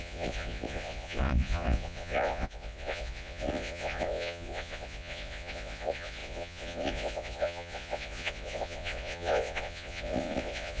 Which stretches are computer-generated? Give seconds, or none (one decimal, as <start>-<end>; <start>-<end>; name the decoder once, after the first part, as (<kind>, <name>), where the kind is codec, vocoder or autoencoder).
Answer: 0.0-10.8 (vocoder, Vocos)